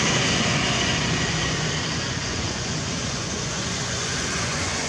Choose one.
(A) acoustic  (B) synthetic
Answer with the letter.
B